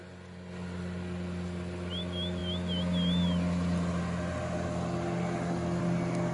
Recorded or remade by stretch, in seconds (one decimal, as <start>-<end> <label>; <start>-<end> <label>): 0.0-6.3 recorded